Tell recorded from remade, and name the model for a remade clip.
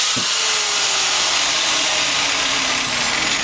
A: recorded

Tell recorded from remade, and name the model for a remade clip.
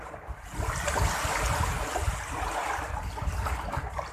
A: recorded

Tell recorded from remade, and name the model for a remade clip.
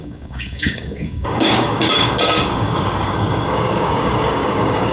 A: remade, codec, DAC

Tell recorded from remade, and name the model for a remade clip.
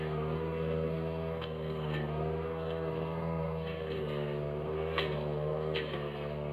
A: remade, codec, SNAC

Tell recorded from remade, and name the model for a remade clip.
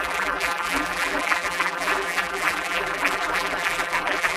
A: remade, vocoder, BigVGAN v2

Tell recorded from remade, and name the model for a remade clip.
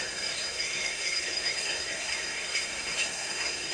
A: remade, codec, SNAC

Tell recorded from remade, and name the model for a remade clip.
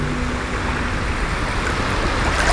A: recorded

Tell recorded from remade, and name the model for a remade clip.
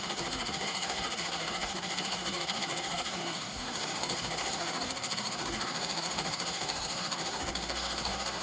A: remade, codec, SNAC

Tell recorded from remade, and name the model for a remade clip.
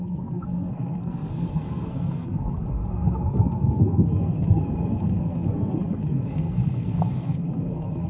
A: remade, codec, SNAC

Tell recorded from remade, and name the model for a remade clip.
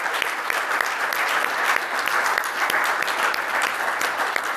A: recorded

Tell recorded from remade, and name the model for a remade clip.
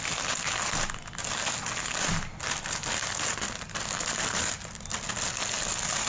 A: recorded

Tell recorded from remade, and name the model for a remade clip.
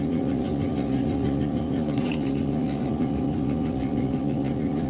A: remade, vocoder, Vocos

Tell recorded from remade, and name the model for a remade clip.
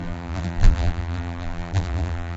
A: remade, vocoder, BigVGAN v2